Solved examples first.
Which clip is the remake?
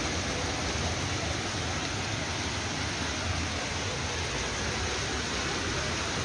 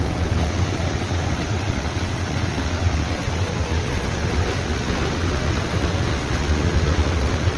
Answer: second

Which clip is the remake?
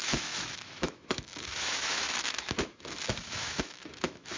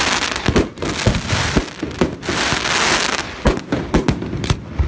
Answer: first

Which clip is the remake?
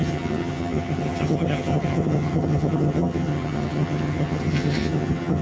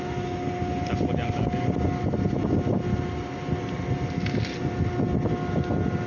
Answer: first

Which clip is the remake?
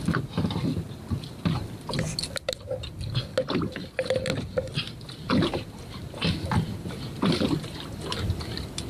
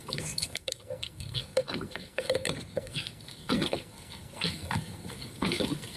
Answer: second